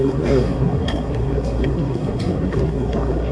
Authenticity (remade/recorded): remade